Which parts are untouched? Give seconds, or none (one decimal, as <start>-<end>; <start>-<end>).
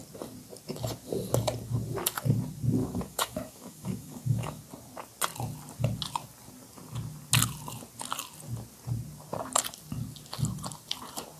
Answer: 0.0-2.8; 4.6-11.4